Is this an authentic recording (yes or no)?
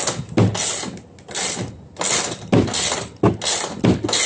yes